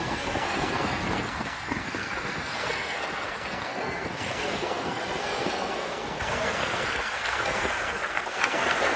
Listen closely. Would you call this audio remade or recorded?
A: remade